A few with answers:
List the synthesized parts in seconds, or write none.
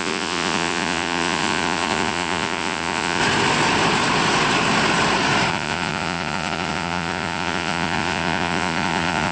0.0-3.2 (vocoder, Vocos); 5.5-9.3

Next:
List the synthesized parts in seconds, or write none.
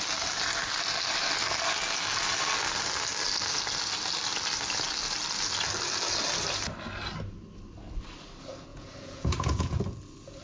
8.7-9.8 (vocoder, Vocos)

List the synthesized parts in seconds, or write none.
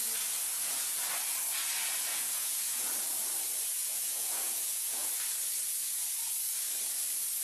2.1-2.9 (vocoder, Vocos); 3.8-5.1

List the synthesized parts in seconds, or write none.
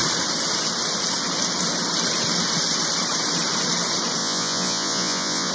4.2-5.5 (vocoder, Vocos)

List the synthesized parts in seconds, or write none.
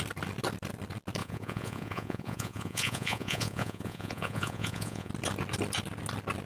1.2-5.1 (vocoder, Vocos)